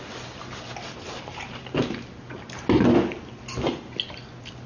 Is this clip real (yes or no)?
yes